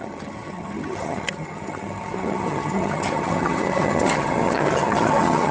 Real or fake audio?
fake